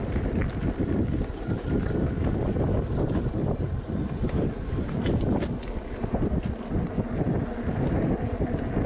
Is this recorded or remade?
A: recorded